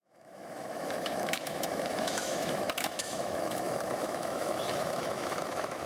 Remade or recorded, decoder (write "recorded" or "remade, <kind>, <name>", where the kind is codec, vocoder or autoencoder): remade, autoencoder, DAC-VAE